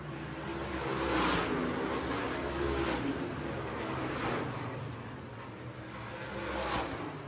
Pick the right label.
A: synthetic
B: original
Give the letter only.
B